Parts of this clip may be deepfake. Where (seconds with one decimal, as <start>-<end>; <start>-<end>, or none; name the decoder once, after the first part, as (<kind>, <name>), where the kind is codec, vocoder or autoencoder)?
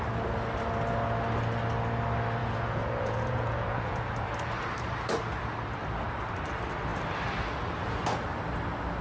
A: 2.4-4.0 (vocoder, Vocos)